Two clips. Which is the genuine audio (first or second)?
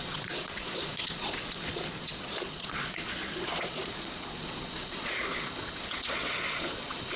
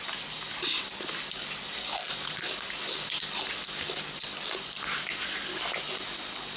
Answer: second